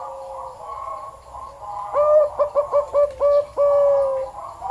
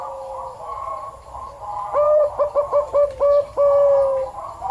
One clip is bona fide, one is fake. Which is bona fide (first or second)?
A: first